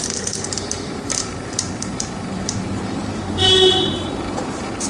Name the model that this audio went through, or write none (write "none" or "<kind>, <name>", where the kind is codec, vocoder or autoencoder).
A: vocoder, BigVGAN v2